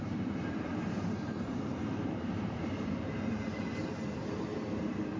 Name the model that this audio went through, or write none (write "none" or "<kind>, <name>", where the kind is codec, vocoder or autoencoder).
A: vocoder, BigVGAN v2